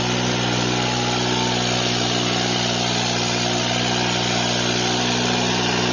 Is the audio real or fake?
real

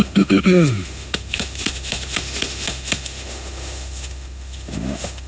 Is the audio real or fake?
fake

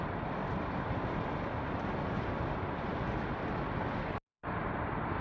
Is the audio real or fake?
real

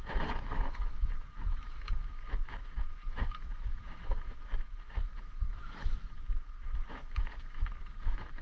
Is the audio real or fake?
fake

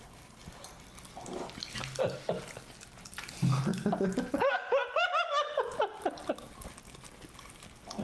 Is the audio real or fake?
real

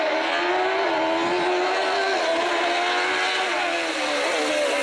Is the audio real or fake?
real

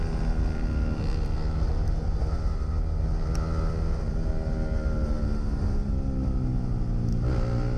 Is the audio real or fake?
real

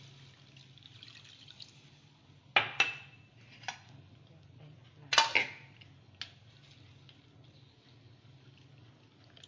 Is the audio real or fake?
real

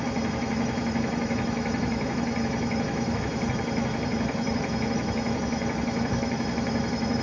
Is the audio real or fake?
fake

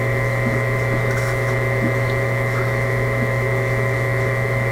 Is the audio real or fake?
fake